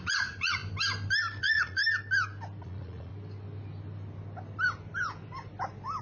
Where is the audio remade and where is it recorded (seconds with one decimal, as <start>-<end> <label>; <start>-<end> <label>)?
0.0-0.6 remade; 0.6-1.4 recorded; 1.4-1.8 remade; 1.8-2.6 recorded; 2.6-3.1 remade; 3.1-6.0 recorded